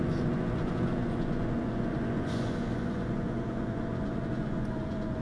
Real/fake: fake